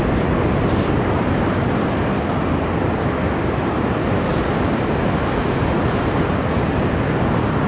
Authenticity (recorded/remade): recorded